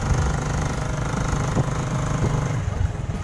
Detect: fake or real real